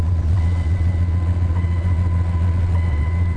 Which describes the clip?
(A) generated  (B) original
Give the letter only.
A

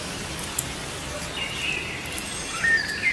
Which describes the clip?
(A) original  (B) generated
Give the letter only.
A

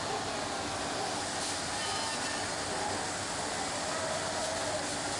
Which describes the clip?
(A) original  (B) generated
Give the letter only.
A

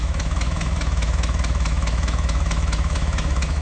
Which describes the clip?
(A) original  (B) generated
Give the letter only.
B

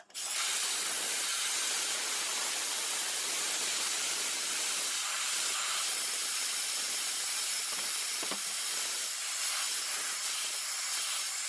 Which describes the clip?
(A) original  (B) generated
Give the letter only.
A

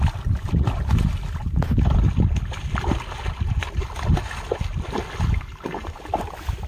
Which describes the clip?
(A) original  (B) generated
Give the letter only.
A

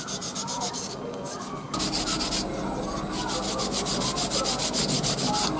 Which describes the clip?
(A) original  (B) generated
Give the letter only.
A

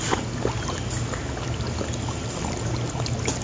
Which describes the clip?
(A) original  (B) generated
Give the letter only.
A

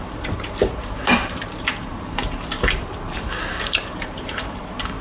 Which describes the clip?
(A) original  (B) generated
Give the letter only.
B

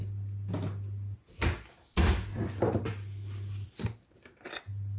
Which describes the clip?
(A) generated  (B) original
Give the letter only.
B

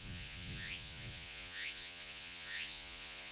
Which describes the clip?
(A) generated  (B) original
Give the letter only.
A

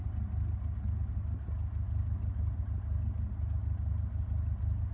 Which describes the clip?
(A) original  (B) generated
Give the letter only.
A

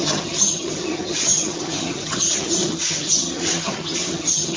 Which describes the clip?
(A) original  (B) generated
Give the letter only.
B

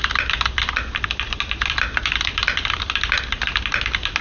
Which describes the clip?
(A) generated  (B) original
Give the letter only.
B